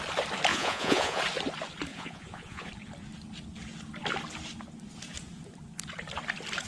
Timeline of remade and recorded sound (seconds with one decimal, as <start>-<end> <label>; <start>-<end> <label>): 0.0-0.5 recorded; 0.5-1.2 remade; 1.2-1.9 recorded; 1.9-2.7 remade; 2.7-6.7 recorded